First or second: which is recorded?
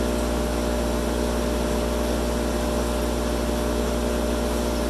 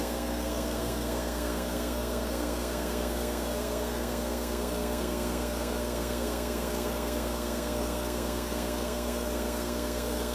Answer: first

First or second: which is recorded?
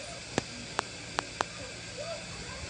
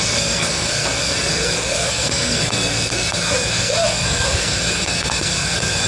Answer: first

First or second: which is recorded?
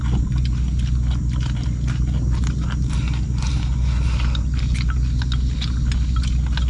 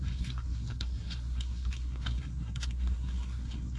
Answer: first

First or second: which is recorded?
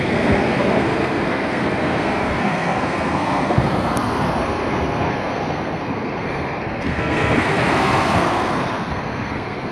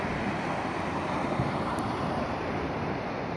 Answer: second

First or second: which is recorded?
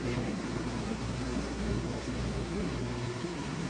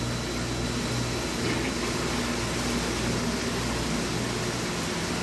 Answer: second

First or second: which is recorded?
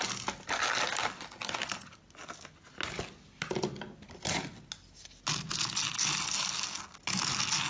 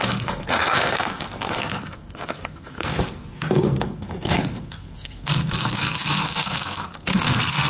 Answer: first